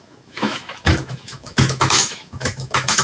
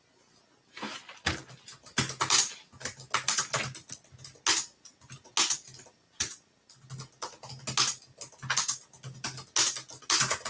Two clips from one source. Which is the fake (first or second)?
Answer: first